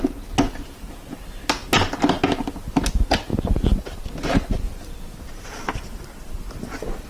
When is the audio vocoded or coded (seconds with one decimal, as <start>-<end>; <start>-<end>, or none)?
3.3-6.5